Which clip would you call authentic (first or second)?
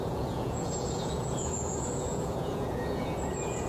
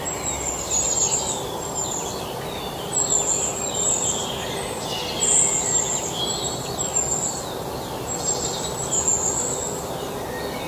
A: second